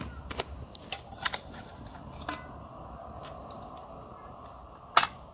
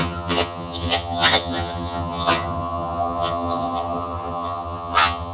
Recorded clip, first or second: first